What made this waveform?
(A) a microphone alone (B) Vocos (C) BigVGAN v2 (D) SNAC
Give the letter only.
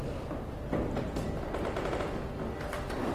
A